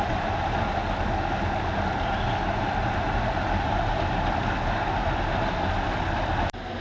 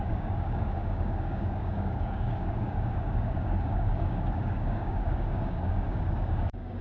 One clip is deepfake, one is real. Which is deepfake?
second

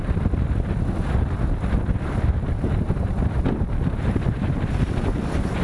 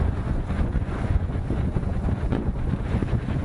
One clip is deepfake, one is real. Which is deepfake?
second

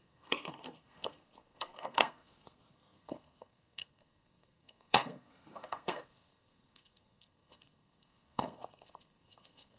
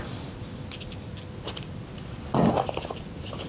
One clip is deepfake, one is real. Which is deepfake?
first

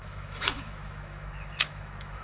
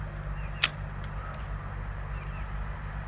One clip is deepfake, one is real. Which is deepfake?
first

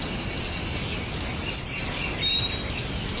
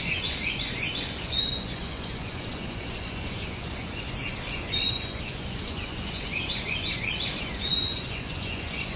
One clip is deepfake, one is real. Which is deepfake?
second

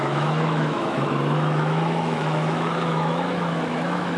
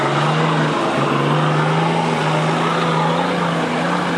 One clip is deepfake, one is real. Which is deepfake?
first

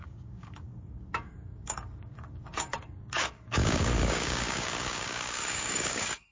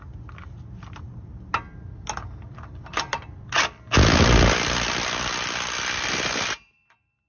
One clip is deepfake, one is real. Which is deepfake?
first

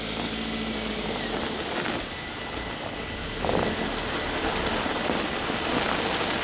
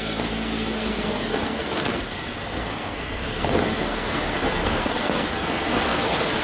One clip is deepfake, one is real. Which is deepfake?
second